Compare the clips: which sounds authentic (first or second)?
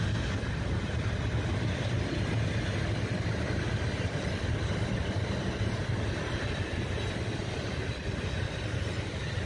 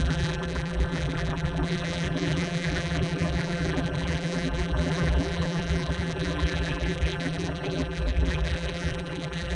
first